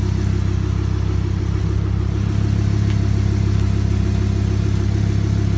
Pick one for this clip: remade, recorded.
recorded